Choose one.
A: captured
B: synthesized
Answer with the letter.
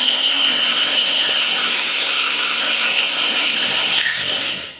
B